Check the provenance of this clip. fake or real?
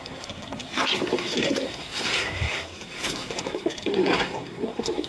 fake